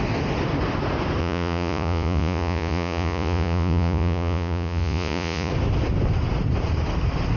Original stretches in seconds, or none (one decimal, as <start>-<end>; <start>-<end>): 0.0-1.2; 5.5-7.4